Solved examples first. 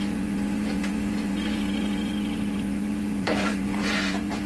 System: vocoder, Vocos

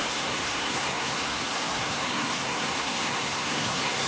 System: codec, SNAC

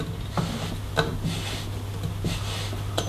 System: none